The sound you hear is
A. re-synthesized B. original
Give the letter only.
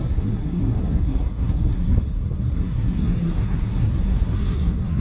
A